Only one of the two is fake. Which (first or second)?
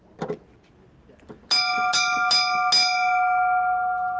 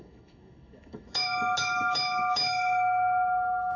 second